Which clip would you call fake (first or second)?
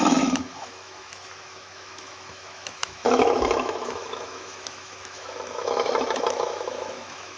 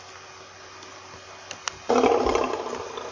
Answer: first